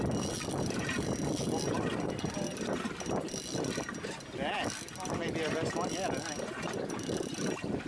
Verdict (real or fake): real